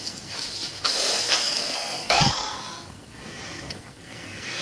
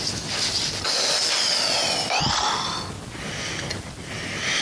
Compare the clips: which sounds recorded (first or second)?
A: second